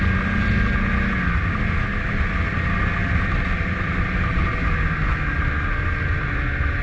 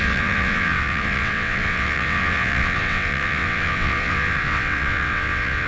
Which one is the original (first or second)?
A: first